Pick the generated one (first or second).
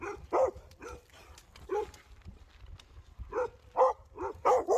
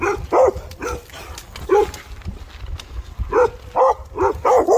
first